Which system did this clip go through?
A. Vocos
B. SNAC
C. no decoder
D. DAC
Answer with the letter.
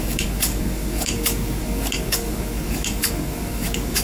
D